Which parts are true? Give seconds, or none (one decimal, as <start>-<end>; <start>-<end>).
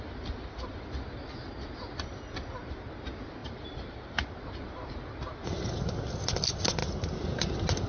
0.0-3.4; 5.0-6.8; 7.5-7.9